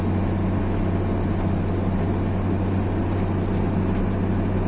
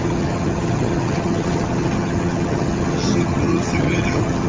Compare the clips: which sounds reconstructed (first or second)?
second